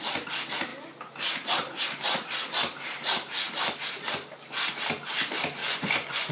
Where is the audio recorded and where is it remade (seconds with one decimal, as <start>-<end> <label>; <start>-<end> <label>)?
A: 0.0-5.6 recorded; 5.6-6.3 remade